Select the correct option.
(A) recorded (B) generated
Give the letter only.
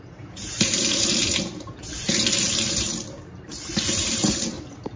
B